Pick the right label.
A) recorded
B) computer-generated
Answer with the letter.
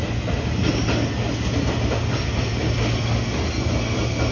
A